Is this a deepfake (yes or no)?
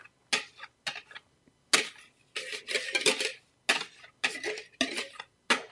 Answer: no